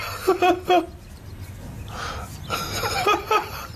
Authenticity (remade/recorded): recorded